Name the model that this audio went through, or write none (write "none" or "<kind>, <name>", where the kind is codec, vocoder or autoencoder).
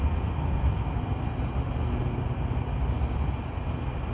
none